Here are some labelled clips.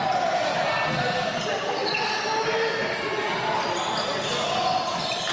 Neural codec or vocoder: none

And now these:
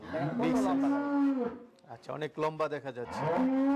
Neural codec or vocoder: none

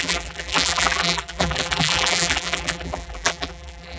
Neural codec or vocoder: vocoder, BigVGAN v2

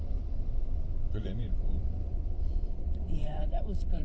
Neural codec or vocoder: vocoder, WaveNeXt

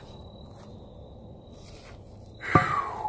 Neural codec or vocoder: none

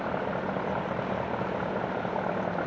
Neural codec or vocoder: none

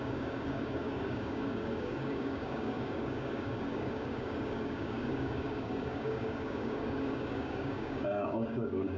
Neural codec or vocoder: codec, DAC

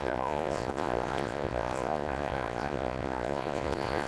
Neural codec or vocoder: vocoder, Vocos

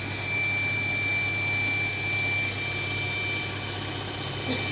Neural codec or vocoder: none